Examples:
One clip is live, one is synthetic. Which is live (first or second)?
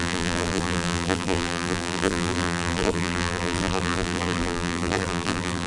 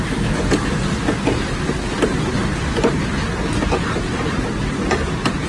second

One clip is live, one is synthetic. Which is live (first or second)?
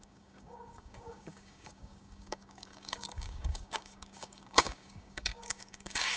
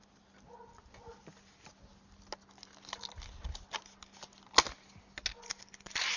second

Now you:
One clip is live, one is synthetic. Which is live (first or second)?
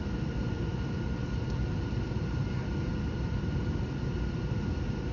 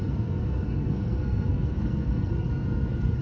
first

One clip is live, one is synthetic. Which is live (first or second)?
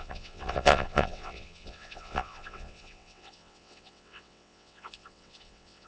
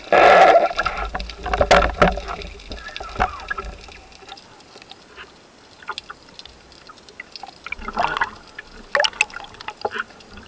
second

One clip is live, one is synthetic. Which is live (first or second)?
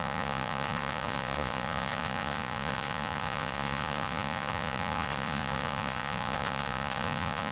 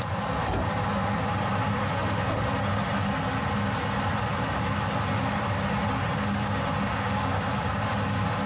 second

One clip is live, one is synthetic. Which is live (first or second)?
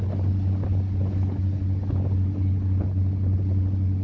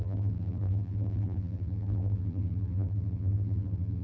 first